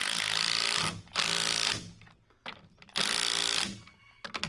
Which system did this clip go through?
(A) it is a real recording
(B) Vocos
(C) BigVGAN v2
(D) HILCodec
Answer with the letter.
A